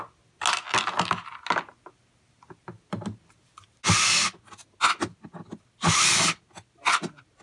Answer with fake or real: real